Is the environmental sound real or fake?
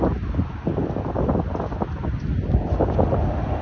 real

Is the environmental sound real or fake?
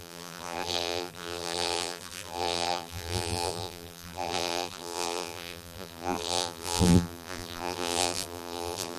fake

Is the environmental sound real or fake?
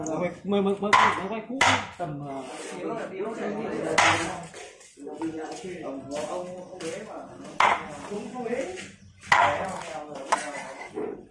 real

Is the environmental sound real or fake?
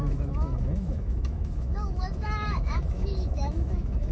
fake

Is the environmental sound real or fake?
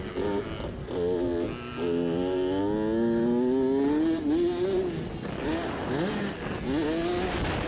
real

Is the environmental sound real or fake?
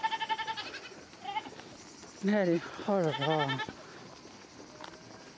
real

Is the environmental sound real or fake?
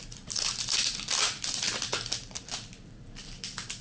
fake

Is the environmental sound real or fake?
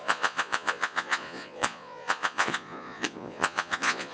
fake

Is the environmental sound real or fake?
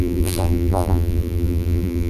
fake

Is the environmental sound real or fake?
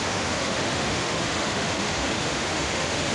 fake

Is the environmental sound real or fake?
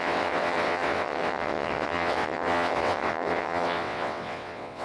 fake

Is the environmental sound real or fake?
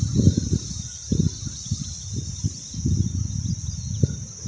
real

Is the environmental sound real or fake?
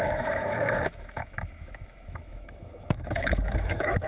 fake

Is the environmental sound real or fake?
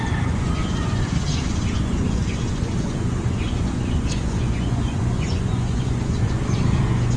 fake